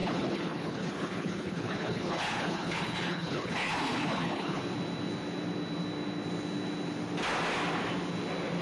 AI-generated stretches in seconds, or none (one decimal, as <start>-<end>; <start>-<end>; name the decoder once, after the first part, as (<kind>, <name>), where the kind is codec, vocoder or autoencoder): 0.0-4.6 (codec, HILCodec)